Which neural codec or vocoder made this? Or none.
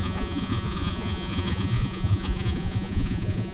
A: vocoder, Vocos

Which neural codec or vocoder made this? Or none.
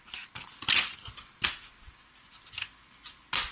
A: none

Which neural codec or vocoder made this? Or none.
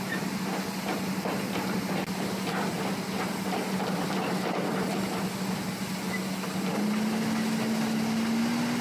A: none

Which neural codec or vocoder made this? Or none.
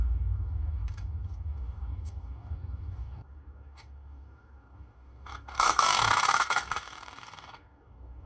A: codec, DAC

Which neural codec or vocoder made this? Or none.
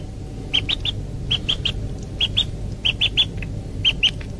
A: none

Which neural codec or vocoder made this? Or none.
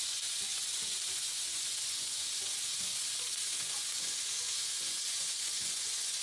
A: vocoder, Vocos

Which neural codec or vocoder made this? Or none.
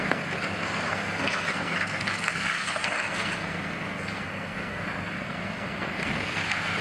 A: codec, SNAC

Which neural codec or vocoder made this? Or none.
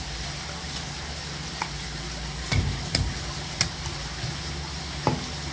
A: none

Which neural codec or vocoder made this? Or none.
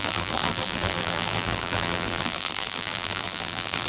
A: vocoder, BigVGAN v2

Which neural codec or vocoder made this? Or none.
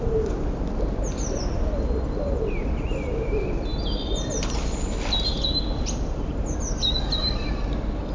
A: none